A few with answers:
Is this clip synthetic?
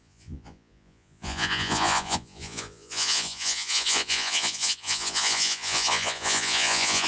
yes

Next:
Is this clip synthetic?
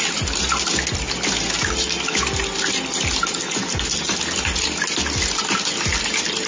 no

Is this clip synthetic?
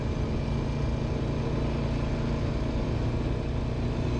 no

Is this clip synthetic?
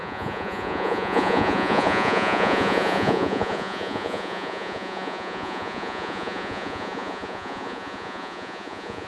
yes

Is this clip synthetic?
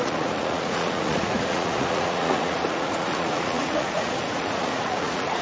yes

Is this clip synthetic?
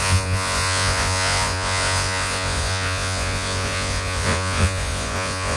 yes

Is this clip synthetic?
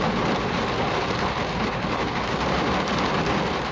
no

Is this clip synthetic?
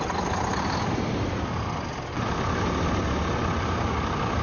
no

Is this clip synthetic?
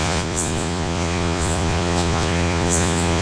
yes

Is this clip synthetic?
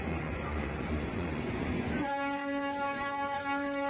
yes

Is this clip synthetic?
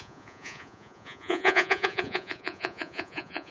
yes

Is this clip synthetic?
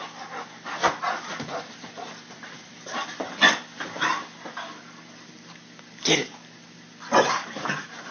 no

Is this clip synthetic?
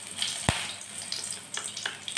no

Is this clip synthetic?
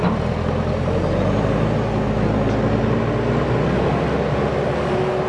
no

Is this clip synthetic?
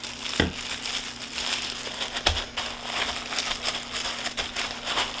no